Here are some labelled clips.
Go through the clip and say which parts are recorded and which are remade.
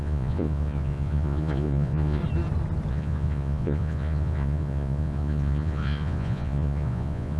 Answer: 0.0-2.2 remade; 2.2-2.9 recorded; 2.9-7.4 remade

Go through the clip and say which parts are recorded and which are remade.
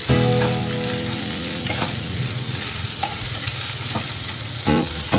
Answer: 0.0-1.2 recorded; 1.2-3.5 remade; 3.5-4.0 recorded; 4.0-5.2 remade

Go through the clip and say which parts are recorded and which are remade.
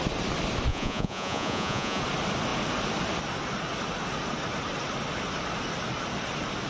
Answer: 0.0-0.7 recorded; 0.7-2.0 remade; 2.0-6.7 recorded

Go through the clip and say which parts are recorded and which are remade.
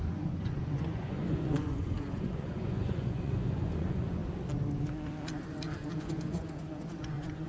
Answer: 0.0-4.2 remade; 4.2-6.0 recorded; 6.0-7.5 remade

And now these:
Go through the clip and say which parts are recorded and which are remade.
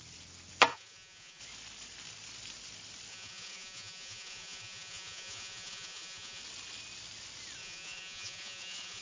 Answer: 0.0-0.7 recorded; 0.7-1.4 remade; 1.4-3.1 recorded; 3.1-6.4 remade; 6.4-7.6 recorded; 7.6-9.0 remade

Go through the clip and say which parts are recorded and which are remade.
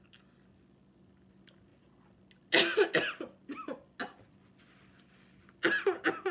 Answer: 0.0-6.3 recorded